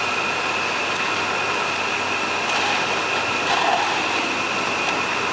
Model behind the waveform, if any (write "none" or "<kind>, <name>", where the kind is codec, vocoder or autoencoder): none